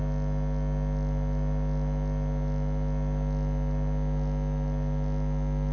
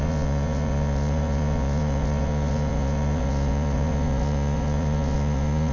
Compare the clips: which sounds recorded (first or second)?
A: first